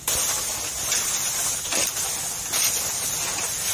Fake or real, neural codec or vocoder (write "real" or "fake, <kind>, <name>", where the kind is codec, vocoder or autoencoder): real